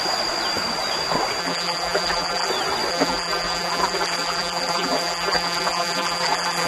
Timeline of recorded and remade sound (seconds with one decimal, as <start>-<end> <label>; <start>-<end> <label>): 0.0-1.4 recorded; 1.4-2.5 remade; 2.5-2.9 recorded; 2.9-6.7 remade